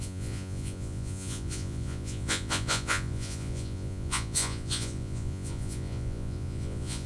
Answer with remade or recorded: remade